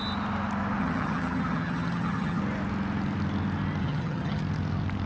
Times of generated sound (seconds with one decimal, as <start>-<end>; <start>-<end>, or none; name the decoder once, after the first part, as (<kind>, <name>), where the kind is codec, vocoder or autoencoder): 0.8-2.4 (vocoder, HiFi-GAN); 3.8-4.4